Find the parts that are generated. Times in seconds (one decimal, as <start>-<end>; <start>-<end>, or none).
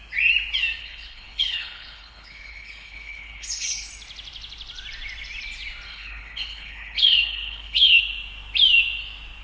0.8-3.9; 5.9-8.0